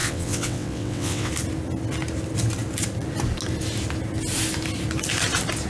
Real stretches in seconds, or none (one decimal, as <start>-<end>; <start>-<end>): 1.3-5.7